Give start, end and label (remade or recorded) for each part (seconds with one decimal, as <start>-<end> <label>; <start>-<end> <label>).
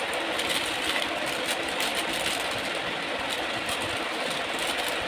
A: 0.0-5.1 recorded